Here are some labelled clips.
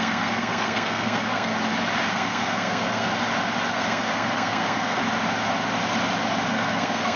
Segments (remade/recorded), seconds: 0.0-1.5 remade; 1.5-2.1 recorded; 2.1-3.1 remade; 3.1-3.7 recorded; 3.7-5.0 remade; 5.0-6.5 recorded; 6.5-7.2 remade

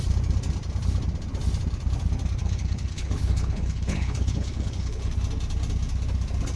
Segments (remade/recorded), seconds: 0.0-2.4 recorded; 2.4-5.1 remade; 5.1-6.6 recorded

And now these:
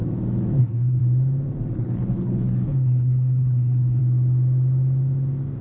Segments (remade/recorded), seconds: 0.0-0.6 recorded; 0.6-1.0 remade; 1.0-1.7 recorded; 1.7-4.0 remade; 4.0-5.6 recorded